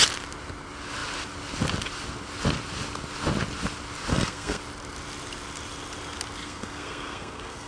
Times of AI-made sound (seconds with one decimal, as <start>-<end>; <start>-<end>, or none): 4.1-4.6; 6.4-7.7